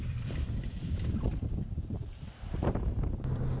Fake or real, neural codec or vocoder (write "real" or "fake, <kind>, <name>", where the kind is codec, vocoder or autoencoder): fake, vocoder, BigVGAN v2